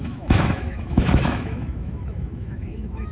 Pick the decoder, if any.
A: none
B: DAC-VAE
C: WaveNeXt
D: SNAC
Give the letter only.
B